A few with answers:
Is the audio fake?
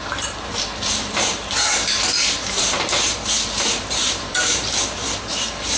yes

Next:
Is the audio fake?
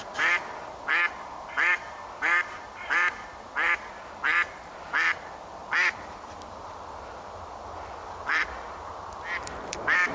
yes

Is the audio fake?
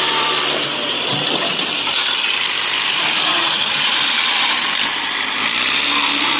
yes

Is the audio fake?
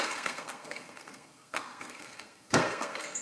yes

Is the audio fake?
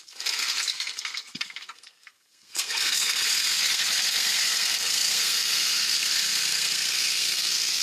yes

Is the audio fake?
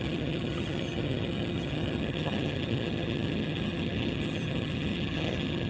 yes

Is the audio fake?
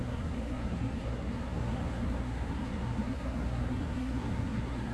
yes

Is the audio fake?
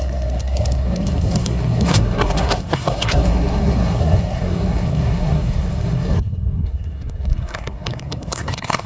yes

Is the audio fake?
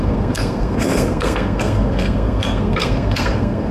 yes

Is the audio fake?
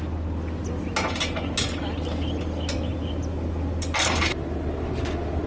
no